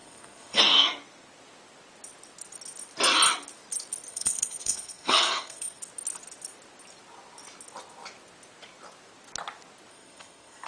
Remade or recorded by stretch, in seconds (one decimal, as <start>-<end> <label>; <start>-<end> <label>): 0.0-0.6 remade; 0.6-4.1 recorded; 4.1-5.8 remade; 5.8-9.9 recorded; 9.9-10.7 remade